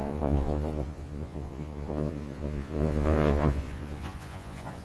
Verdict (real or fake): fake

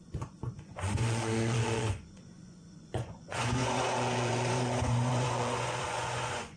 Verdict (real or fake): fake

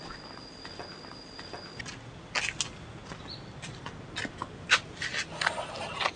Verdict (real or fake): real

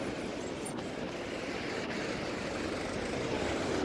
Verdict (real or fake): real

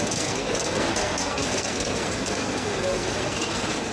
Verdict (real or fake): fake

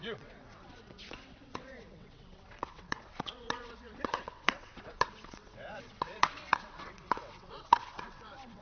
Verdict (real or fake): fake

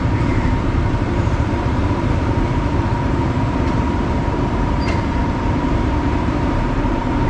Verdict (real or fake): fake